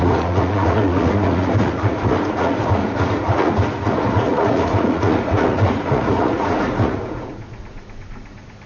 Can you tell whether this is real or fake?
fake